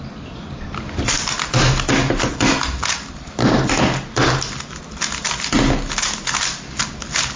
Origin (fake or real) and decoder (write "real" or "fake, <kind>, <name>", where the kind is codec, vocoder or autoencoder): real